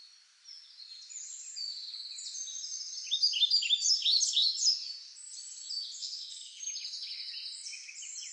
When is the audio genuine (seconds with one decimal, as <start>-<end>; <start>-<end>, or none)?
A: 0.0-6.0; 6.6-8.3